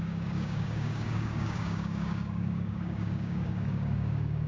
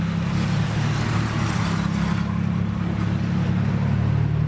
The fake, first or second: first